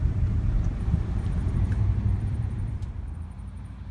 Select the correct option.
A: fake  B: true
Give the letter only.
A